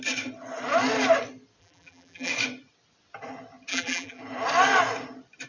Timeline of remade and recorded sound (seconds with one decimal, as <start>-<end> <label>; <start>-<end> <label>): 0.0-1.6 recorded; 1.6-2.3 remade; 2.3-3.7 recorded; 3.7-4.2 remade; 4.2-5.5 recorded